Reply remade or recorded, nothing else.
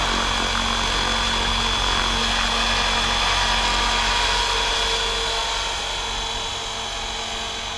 recorded